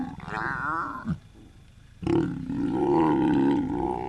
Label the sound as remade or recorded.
recorded